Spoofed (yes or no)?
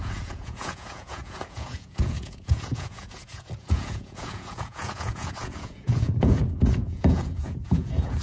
yes